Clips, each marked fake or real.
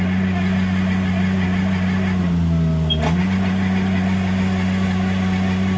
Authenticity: real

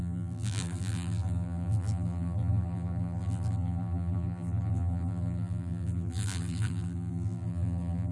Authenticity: fake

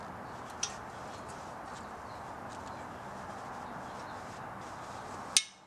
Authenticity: real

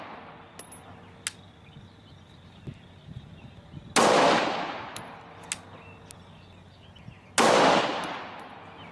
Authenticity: real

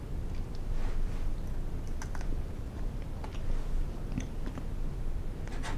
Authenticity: real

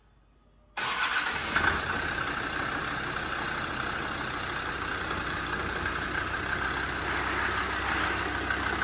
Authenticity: real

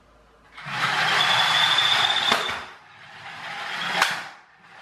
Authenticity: real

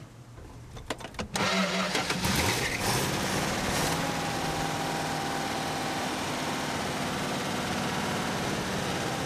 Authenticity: real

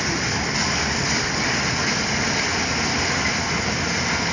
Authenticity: real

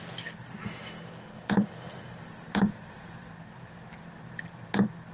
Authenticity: real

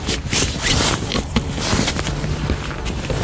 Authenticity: fake